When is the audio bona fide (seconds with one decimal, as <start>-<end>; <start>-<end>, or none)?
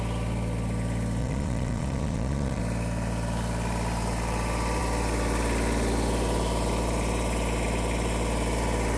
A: 0.0-1.2; 2.6-9.0